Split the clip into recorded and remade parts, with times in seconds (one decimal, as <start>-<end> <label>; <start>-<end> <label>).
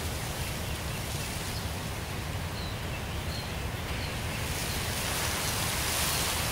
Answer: 0.0-6.5 recorded